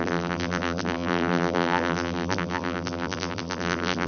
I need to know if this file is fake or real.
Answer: fake